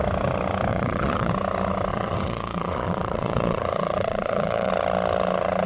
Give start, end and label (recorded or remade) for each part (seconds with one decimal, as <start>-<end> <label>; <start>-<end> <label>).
0.0-0.7 recorded; 0.7-1.3 remade; 1.3-1.9 recorded; 1.9-4.7 remade; 4.7-5.7 recorded